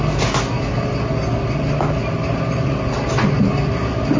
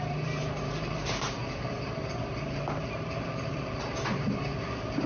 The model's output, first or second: second